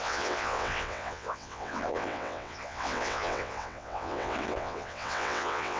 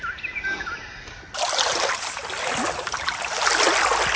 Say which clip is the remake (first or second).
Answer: first